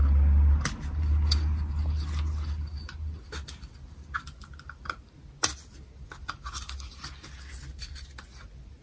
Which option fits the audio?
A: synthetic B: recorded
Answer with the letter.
B